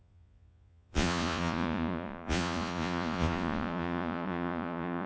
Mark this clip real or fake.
fake